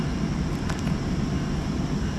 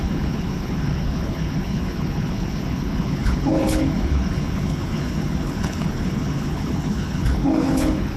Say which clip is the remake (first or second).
second